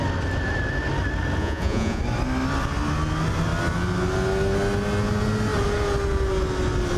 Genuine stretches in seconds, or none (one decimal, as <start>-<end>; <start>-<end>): 0.0-1.4; 2.0-7.0